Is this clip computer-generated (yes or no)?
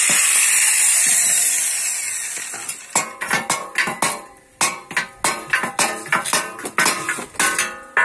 no